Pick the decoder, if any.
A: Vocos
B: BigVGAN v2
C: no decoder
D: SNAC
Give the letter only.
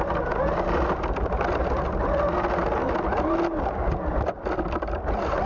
C